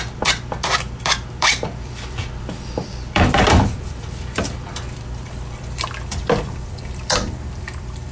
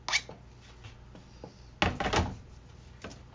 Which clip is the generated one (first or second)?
first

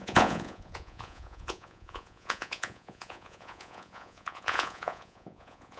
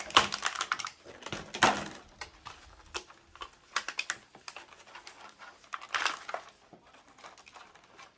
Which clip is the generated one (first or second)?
first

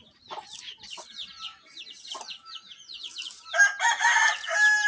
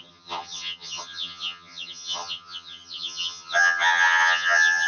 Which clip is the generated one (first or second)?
second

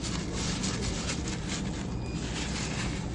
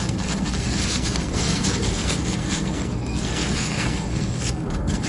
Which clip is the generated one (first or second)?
second